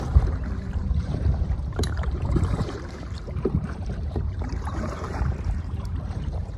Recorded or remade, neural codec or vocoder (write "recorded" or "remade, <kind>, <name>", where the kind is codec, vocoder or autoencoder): remade, vocoder, BigVGAN v2